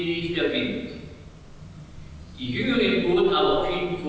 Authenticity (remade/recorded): recorded